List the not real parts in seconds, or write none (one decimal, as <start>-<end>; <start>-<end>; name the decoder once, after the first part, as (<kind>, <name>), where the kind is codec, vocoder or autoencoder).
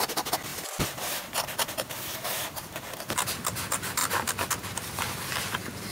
0.5-3.0 (vocoder, BigVGAN v2); 4.0-5.0